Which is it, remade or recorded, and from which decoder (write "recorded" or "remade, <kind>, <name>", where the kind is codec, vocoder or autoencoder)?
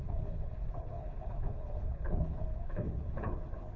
remade, codec, HILCodec